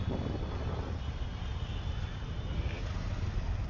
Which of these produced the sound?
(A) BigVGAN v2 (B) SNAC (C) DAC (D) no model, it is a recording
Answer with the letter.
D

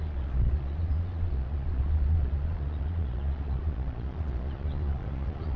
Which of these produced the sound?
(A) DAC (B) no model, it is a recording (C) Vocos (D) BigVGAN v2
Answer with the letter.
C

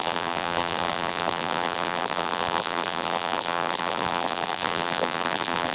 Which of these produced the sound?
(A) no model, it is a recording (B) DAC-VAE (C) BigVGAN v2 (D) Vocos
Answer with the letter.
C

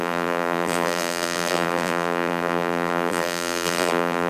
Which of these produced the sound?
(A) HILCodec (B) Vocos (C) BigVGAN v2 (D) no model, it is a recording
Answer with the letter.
C